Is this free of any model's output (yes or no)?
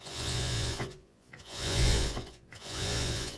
no